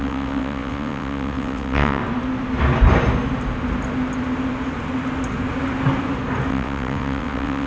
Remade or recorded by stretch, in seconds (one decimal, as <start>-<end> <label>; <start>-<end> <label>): 0.0-2.0 remade; 2.0-6.5 recorded; 6.5-7.7 remade